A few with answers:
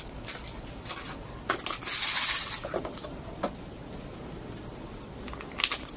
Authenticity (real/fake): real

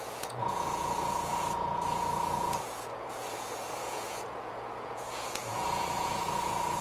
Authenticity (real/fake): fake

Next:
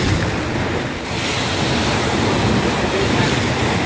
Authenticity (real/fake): real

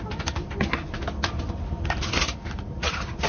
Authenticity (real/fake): real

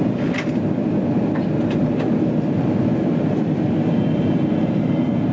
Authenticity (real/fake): real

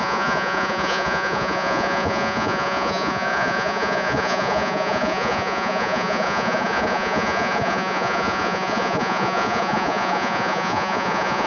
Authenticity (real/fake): fake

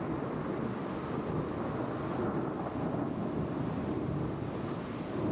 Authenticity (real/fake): real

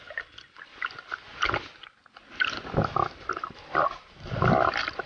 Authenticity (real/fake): real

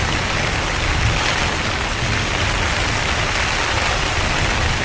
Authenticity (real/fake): real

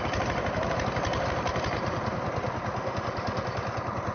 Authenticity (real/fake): real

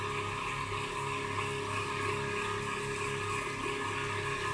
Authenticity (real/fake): real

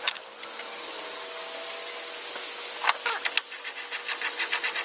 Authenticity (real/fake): real